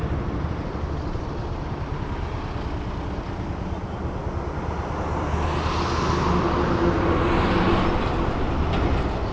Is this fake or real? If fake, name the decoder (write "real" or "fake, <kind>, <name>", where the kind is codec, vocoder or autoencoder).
real